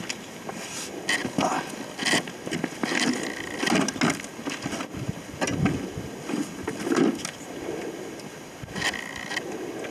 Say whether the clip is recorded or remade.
recorded